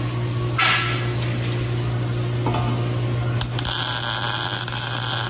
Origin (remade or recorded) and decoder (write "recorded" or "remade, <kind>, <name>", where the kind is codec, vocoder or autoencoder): recorded